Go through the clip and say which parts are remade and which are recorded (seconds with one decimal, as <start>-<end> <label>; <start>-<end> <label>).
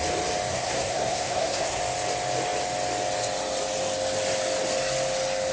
0.0-0.5 recorded; 0.5-1.8 remade; 1.8-5.5 recorded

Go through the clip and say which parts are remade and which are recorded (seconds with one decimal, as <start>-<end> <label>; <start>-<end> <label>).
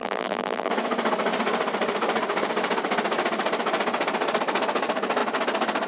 0.0-0.7 remade; 0.7-5.9 recorded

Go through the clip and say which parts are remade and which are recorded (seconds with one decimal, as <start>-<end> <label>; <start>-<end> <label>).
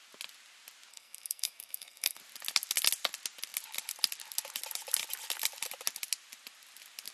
0.0-0.9 recorded; 0.9-2.2 remade; 2.2-7.1 recorded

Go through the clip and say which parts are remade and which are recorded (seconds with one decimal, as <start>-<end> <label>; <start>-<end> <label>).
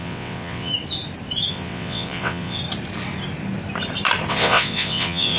0.0-0.7 remade; 0.7-1.5 recorded; 1.5-2.6 remade; 2.6-4.3 recorded; 4.3-5.4 remade